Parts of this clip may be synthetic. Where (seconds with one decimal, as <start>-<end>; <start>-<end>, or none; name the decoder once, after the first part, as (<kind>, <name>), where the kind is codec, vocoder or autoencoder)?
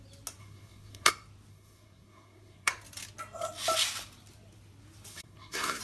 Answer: 0.4-1.1 (codec, SNAC); 1.5-2.7; 5.1-5.8